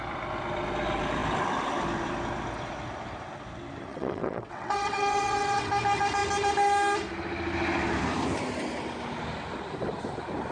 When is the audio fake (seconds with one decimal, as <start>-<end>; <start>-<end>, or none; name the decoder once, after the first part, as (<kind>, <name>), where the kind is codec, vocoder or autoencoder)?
3.9-5.7 (vocoder, WaveNeXt)